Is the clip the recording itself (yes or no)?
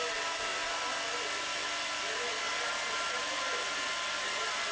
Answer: no